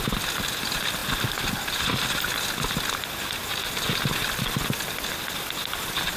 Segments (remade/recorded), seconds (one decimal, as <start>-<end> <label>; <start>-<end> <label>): 0.0-6.2 recorded